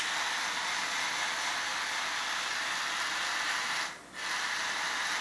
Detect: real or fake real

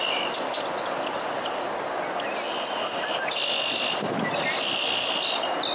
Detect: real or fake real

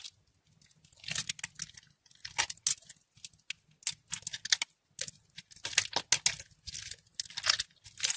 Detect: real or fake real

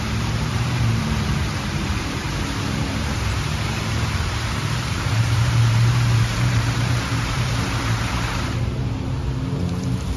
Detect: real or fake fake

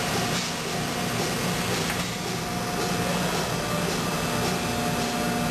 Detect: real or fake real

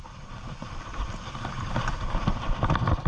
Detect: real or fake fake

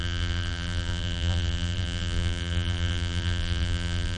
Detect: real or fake fake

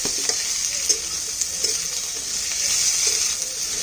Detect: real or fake real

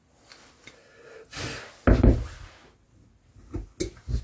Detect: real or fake real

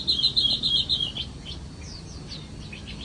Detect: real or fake fake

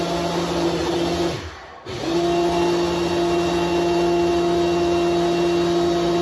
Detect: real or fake real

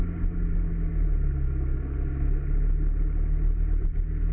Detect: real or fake real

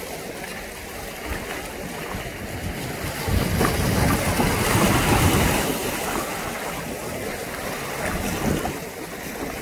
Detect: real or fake real